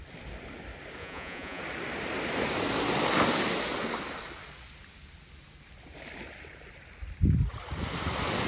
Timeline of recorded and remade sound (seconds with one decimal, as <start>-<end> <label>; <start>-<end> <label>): 0.0-1.0 recorded; 1.0-1.6 remade; 1.6-8.5 recorded